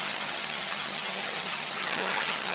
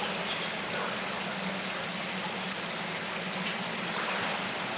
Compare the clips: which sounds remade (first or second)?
first